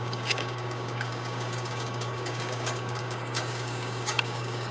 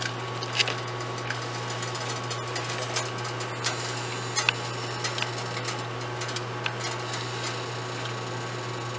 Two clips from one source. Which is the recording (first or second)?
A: second